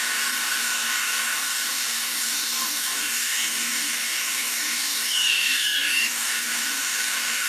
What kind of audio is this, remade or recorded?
remade